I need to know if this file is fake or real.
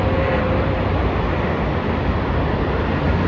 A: real